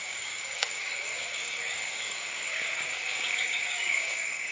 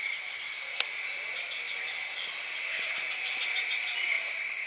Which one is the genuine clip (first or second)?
second